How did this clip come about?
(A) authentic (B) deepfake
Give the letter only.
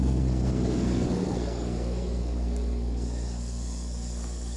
B